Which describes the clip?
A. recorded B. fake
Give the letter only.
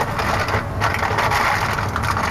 A